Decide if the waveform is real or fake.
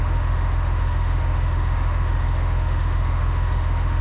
fake